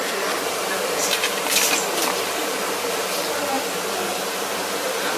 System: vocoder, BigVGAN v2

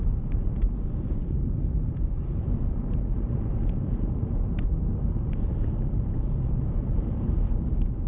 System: vocoder, BigVGAN v2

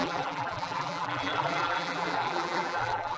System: vocoder, BigVGAN v2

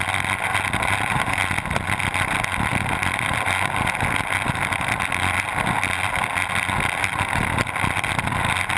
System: none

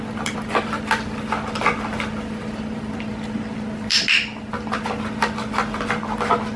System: none